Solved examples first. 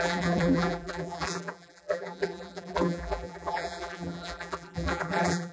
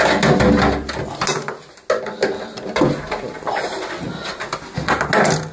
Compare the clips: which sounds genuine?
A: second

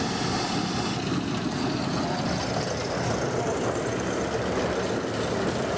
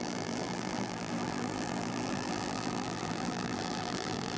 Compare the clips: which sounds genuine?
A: first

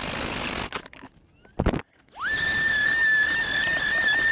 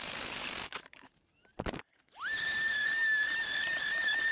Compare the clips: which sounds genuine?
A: first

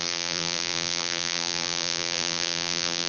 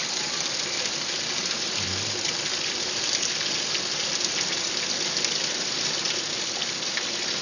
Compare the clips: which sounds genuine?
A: second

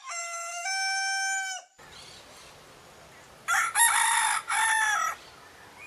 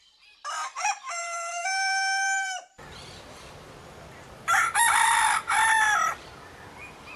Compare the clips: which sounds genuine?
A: first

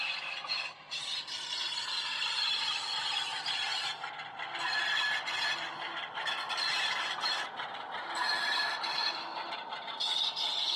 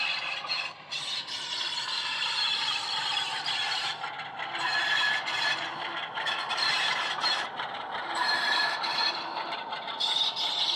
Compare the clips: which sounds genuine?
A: first